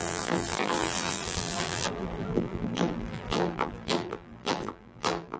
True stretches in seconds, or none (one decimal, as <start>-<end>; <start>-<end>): none